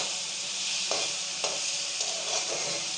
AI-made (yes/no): yes